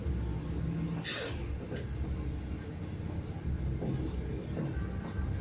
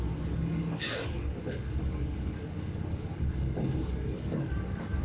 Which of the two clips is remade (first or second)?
second